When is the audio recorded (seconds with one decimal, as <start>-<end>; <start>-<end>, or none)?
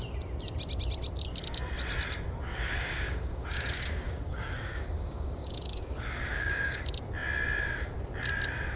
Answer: 0.0-2.5; 6.8-8.8